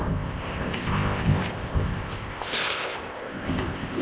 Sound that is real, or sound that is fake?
fake